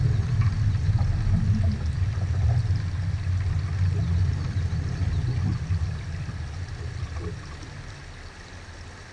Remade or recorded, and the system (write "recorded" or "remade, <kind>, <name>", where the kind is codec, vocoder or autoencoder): recorded